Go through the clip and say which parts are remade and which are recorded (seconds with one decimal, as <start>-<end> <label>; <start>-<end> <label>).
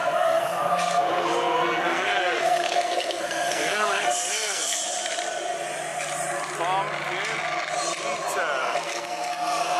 0.0-4.8 remade; 4.8-8.6 recorded; 8.6-9.8 remade